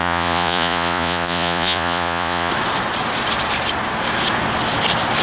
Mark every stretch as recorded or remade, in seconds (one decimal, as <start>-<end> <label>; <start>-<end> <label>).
0.0-2.5 remade; 2.5-5.2 recorded